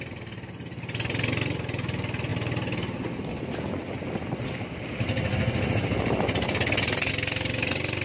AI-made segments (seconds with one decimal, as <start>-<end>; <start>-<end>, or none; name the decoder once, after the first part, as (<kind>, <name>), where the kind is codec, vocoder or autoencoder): none